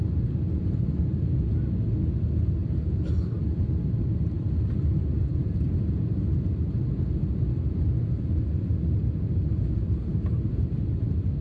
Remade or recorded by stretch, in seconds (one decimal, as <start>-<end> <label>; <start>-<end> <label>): 0.0-11.4 recorded